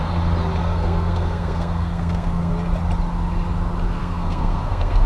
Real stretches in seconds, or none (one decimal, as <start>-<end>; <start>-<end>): 0.0-0.6; 2.5-4.0